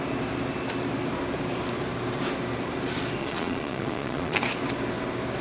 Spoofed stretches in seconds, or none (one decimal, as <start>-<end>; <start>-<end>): 3.2-4.4